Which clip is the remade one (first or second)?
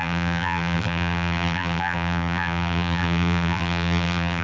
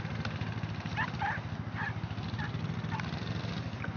first